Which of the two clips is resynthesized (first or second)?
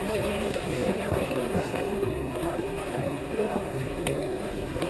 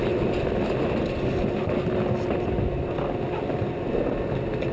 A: first